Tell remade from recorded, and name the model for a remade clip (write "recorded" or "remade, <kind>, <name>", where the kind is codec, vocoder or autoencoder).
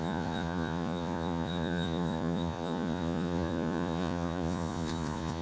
remade, vocoder, Vocos